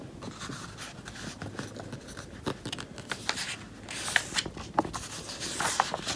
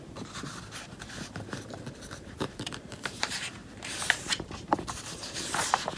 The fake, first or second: second